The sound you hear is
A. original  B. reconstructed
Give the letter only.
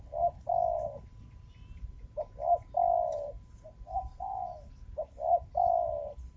A